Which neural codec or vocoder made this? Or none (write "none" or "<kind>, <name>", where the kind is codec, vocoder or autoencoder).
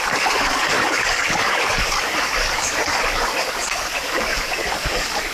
codec, DAC